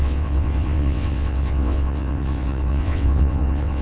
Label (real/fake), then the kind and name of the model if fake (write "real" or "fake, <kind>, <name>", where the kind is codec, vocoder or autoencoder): fake, vocoder, WaveNeXt